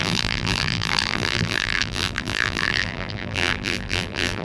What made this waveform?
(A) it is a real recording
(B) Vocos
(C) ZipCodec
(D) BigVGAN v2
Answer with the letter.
D